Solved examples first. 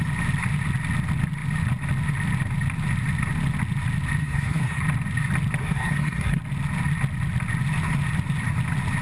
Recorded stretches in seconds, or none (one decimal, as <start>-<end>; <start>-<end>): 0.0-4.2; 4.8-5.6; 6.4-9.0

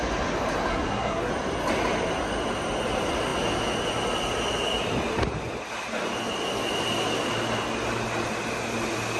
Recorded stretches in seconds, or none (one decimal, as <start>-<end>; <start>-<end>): 0.0-0.7; 1.3-9.2

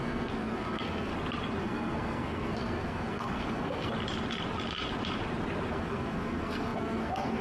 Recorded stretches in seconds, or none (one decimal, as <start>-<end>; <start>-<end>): 1.1-1.6; 3.9-5.7

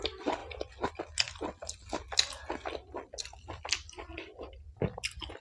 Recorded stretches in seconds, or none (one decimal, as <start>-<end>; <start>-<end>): 0.0-5.4

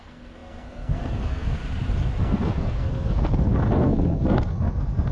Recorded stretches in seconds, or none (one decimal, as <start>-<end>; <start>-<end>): 1.6-2.2

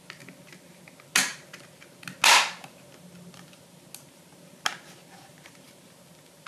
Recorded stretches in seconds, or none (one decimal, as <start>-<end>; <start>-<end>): 0.0-6.5

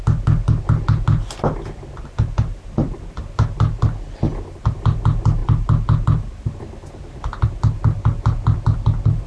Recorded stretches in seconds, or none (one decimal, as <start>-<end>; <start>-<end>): 0.0-9.3

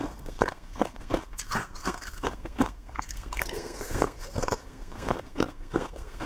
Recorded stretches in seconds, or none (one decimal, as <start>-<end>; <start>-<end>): none